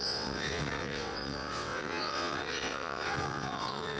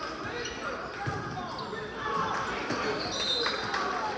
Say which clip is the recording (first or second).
second